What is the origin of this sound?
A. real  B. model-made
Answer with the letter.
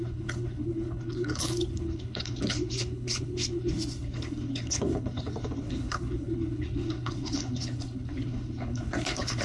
B